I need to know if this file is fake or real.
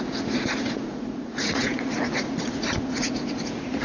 fake